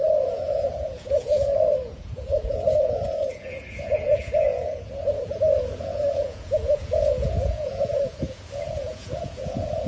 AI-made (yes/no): yes